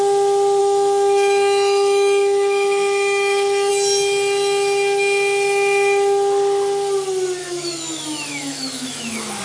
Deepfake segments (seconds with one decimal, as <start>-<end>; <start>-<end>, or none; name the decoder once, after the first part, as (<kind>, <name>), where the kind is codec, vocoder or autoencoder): 0.6-3.7 (autoencoder, DAC-VAE); 7.4-9.4